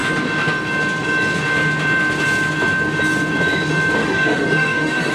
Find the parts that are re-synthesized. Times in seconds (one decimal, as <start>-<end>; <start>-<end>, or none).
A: 4.0-5.1